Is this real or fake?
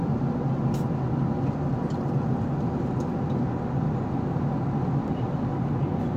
real